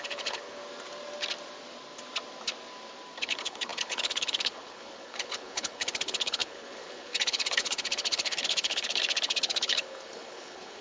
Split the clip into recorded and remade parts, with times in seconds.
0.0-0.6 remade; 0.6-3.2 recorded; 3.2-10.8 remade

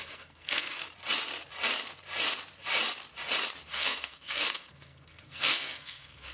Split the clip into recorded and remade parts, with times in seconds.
0.0-0.8 remade; 0.8-3.7 recorded; 3.7-6.3 remade